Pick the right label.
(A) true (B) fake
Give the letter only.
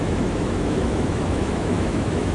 B